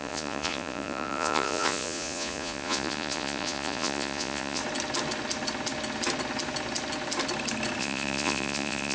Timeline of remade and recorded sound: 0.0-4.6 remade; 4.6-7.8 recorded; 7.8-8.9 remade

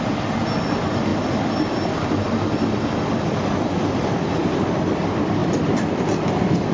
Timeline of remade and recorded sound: 0.0-6.7 recorded

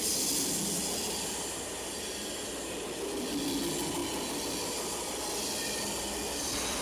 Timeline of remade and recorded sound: 0.0-6.8 recorded

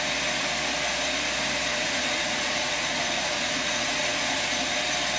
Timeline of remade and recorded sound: 0.0-1.7 recorded; 1.7-4.8 remade; 4.8-5.2 recorded

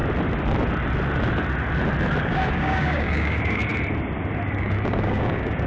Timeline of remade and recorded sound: 0.0-2.2 recorded; 2.2-3.7 remade; 3.7-4.5 recorded; 4.5-5.7 remade

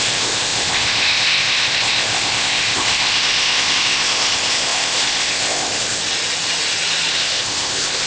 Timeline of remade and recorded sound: 0.0-6.0 remade; 6.0-7.1 recorded; 7.1-8.1 remade